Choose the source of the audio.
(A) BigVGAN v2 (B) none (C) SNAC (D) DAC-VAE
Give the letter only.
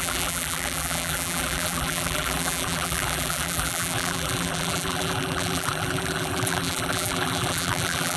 A